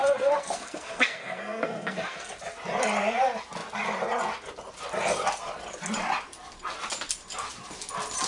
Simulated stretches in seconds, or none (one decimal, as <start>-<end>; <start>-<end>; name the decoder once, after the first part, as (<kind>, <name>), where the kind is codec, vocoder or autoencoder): 0.0-2.3 (codec, SNAC)